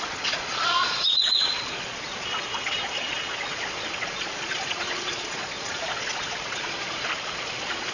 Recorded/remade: remade